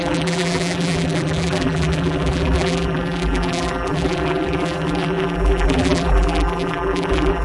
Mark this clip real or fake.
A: fake